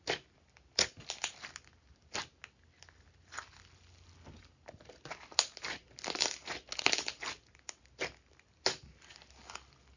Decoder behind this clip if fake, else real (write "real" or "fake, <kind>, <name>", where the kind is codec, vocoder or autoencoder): real